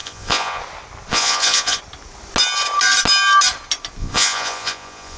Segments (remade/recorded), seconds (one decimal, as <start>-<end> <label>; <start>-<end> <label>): 0.0-0.6 remade; 0.6-1.1 recorded; 1.1-1.8 remade; 1.8-4.0 recorded; 4.0-5.2 remade